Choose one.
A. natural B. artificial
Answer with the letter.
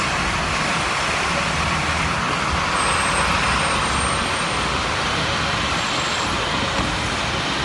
A